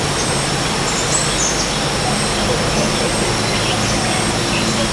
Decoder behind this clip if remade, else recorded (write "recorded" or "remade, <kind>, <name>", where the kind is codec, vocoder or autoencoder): recorded